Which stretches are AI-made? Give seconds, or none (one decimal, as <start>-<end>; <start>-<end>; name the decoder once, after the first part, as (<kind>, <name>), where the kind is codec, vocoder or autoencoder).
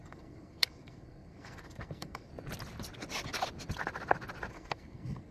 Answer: 0.0-2.3 (codec, SNAC); 4.5-5.3